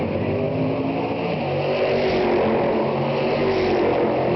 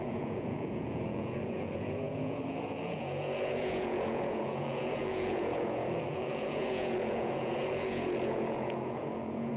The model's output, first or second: second